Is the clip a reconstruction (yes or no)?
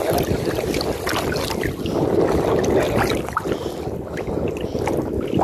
no